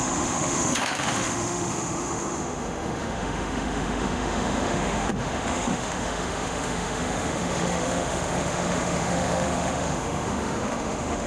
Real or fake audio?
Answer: fake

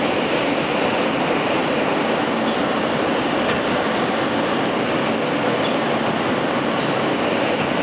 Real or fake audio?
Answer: real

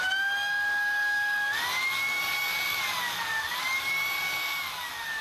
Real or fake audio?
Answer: fake